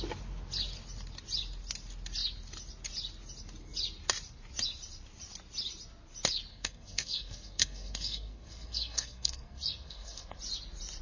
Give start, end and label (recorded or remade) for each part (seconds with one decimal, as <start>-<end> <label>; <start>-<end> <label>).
0.0-6.5 recorded; 6.5-10.4 remade; 10.4-11.0 recorded